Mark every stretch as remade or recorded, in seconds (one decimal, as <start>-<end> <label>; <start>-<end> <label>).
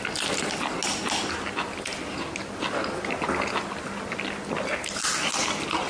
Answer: 0.0-5.9 recorded